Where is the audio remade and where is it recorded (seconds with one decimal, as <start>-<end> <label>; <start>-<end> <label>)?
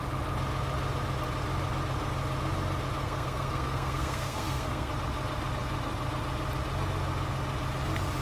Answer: 0.0-3.0 recorded; 3.0-4.9 remade; 4.9-8.2 recorded